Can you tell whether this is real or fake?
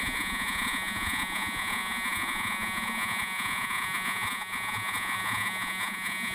fake